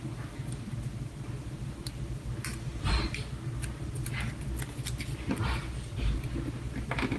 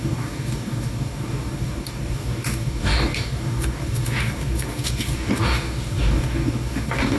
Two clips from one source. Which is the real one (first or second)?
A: first